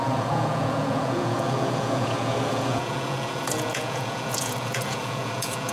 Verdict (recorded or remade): remade